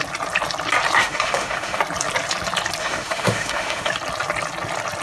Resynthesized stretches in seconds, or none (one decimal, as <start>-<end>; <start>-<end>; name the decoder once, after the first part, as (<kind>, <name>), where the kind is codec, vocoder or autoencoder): 1.0-1.8 (autoencoder, DAC-VAE); 2.8-3.9